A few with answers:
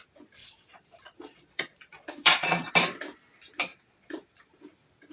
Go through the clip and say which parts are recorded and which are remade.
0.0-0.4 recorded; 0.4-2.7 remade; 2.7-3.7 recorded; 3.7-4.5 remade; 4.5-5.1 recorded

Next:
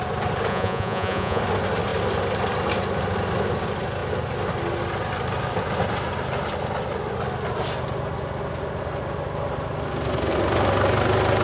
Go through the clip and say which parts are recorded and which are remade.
0.0-0.5 recorded; 0.5-1.4 remade; 1.4-11.4 recorded

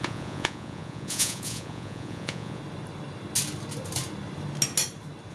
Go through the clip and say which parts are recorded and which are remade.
0.0-2.6 remade; 2.6-5.3 recorded

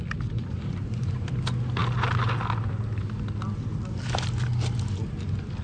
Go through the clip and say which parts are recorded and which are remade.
0.0-5.6 recorded

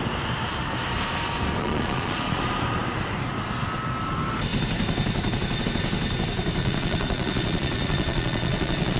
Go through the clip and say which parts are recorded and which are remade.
0.0-1.6 recorded; 1.6-2.4 remade; 2.4-6.6 recorded; 6.6-9.0 remade